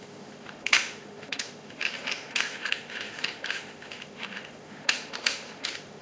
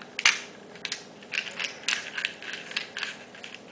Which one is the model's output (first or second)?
first